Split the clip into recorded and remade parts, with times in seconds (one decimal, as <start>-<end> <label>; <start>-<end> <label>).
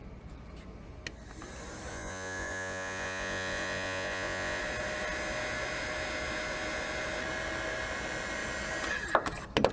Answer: 0.0-1.9 recorded; 1.9-4.6 remade; 4.6-9.7 recorded